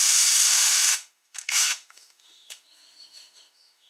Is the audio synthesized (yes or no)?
yes